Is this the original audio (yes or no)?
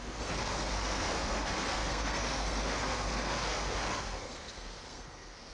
no